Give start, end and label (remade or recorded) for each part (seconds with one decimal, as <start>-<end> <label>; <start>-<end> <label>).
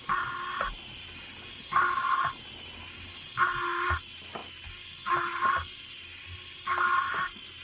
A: 0.0-7.6 recorded